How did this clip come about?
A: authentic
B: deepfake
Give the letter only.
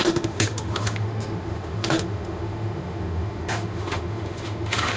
B